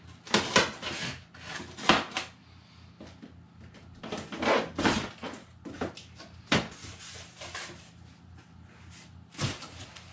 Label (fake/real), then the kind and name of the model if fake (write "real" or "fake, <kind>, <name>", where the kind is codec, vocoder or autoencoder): real